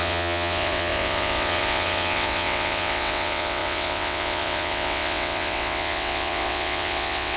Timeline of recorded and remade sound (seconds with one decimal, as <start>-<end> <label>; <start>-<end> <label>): 0.0-7.4 remade